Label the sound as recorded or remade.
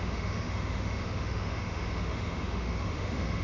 remade